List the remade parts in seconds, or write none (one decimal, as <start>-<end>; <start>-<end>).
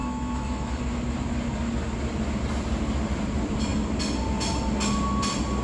0.0-0.8